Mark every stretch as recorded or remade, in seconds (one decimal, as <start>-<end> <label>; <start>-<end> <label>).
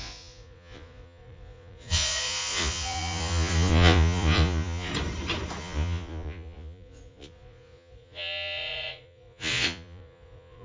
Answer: 0.0-4.9 remade; 4.9-5.6 recorded; 5.6-10.6 remade